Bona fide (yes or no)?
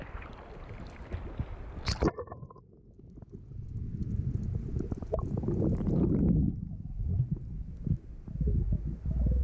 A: yes